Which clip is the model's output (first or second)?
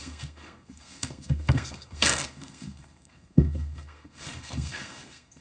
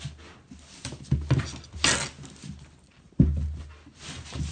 first